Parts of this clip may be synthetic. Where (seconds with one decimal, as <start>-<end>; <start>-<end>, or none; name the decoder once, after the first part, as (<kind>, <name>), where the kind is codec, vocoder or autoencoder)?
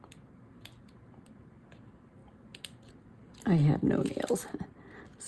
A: none